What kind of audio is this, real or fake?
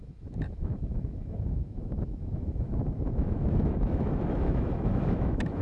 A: fake